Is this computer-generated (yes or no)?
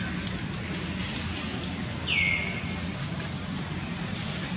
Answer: no